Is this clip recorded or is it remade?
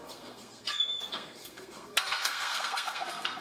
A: remade